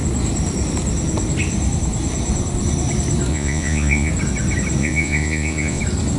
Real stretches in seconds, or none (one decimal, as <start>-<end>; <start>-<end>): 0.0-3.3; 4.1-4.8; 5.8-6.2